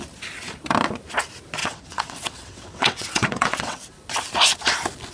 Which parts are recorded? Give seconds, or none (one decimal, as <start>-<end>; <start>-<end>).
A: 0.0-1.6; 3.9-5.1